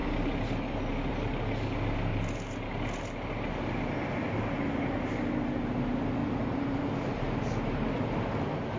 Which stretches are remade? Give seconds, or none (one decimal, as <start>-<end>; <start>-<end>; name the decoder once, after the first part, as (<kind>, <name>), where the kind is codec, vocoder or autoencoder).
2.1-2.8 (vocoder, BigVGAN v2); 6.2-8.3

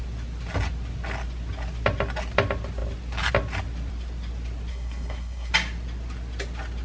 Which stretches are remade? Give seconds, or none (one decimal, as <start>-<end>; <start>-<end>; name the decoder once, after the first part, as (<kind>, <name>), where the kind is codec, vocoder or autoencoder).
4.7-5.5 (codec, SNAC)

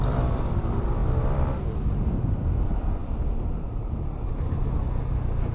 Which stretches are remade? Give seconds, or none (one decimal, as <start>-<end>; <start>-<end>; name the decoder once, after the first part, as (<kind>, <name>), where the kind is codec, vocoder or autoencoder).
0.0-0.5 (vocoder, BigVGAN v2); 1.0-1.6; 3.0-4.3

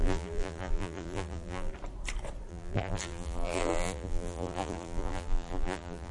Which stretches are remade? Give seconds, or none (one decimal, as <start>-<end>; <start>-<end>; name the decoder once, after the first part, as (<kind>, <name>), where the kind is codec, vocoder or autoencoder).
0.0-1.7 (vocoder, BigVGAN v2); 2.5-6.1

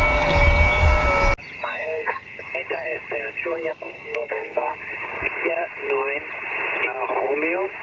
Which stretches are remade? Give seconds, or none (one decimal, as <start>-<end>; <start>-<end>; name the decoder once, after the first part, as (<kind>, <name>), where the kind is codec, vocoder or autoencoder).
1.7-2.4 (codec, SNAC); 3.7-4.7

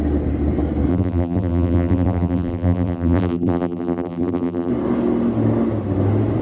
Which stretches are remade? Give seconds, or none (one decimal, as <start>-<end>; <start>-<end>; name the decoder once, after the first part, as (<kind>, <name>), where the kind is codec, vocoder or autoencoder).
0.9-4.7 (vocoder, BigVGAN v2)

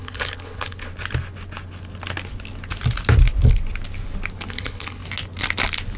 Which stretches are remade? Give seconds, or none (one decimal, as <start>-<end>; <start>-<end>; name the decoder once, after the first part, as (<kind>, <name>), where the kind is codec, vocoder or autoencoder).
0.0-0.9 (codec, HILCodec); 4.5-5.0